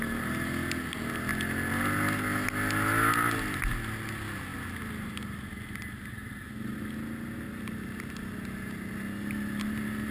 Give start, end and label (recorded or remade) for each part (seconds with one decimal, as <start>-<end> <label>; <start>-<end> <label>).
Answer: 0.0-10.1 recorded